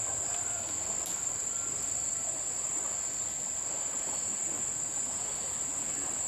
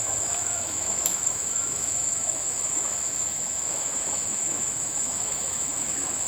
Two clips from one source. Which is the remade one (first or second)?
second